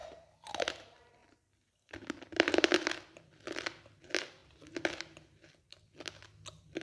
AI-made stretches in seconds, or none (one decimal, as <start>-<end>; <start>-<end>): 1.2-4.0